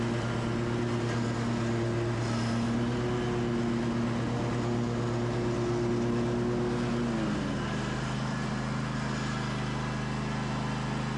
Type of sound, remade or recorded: recorded